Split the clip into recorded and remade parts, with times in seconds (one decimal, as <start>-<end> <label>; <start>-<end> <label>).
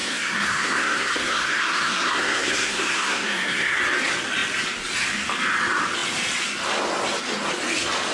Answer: 0.0-3.8 remade; 3.8-8.1 recorded